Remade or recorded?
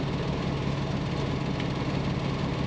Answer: recorded